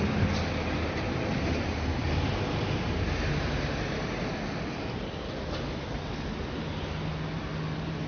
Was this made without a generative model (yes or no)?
yes